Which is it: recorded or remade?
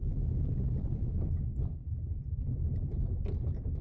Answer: recorded